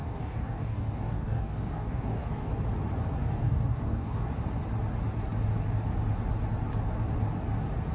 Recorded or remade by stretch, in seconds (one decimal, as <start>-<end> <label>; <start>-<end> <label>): 0.0-2.5 remade; 2.5-3.2 recorded; 3.2-4.3 remade; 4.3-7.9 recorded